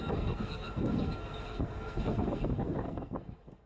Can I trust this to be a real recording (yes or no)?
no